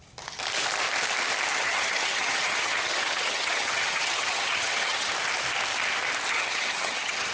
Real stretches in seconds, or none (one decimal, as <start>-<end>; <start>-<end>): 0.0-1.5; 5.1-6.3